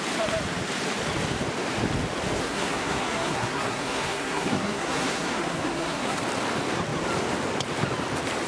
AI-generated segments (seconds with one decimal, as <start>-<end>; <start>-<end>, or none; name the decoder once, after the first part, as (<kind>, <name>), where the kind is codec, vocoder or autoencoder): 2.4-6.2 (codec, SNAC)